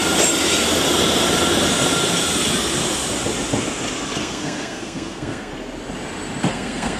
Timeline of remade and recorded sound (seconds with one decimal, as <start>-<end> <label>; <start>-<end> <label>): 0.0-4.2 recorded; 4.2-5.5 remade; 5.5-6.5 recorded; 6.5-7.0 remade